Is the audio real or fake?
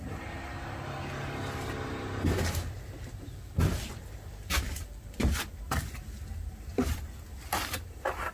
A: fake